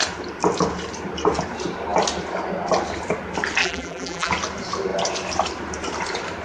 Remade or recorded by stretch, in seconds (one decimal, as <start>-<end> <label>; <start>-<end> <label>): 0.0-3.6 recorded; 3.6-4.3 remade; 4.3-6.4 recorded